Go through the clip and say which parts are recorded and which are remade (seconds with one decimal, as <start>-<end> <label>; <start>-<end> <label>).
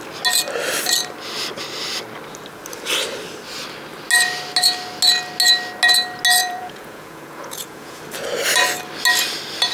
0.0-6.4 recorded; 6.4-8.0 remade; 8.0-9.7 recorded